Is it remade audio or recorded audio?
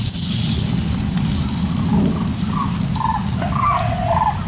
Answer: recorded